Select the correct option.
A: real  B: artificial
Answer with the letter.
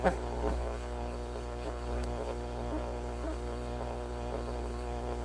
B